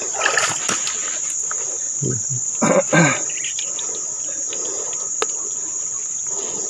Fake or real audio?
real